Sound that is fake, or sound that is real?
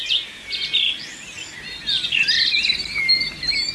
real